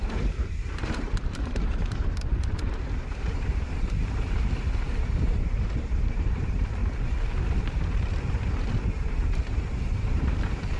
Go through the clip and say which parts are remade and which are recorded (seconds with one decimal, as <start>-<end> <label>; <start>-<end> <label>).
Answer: 0.0-6.8 remade; 6.8-8.1 recorded; 8.1-10.8 remade